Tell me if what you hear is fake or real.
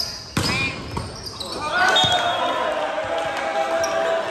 real